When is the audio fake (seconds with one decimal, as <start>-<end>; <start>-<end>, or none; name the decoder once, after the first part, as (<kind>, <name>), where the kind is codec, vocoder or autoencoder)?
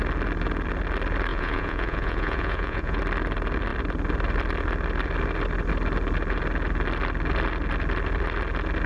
1.3-3.0 (vocoder, Vocos)